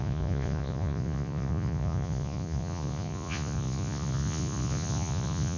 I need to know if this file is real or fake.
fake